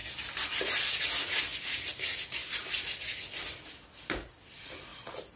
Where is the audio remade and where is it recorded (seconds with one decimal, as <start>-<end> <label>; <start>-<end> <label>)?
0.0-5.4 recorded